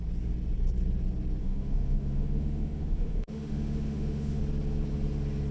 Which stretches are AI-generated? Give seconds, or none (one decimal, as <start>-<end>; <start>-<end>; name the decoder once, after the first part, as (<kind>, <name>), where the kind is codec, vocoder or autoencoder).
1.4-4.4 (autoencoder, DAC-VAE)